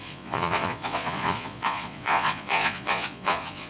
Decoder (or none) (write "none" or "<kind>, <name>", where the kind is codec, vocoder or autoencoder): vocoder, Vocos